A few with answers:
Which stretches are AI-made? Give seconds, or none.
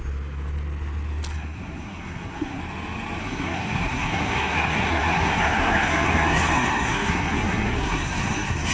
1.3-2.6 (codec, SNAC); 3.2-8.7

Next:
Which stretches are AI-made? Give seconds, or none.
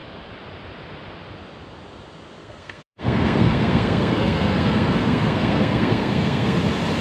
2.4-6.6 (codec, SNAC)